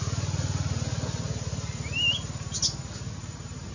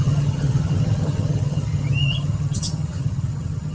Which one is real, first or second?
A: first